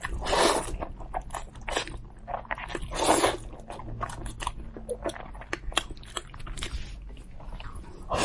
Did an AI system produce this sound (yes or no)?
no